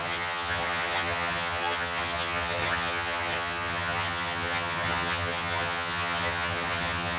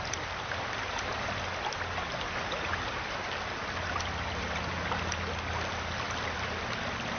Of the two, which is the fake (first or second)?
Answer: first